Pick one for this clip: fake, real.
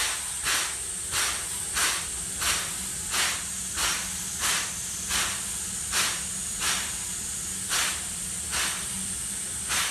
real